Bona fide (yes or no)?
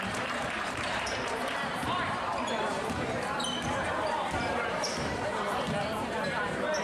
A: no